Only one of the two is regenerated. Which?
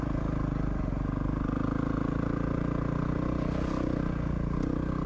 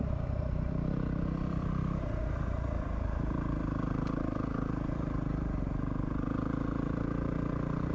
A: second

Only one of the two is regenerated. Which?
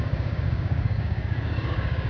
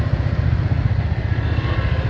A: first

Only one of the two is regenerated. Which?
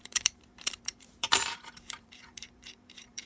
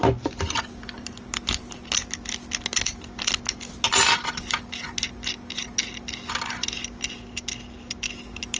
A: first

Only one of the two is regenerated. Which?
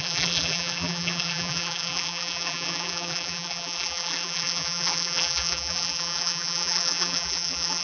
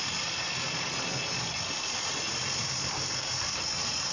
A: first